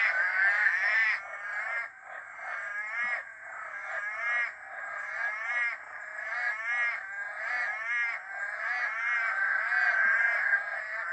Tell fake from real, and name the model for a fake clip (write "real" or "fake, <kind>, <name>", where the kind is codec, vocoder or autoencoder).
real